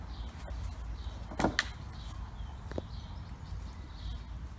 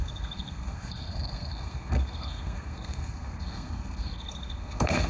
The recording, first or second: first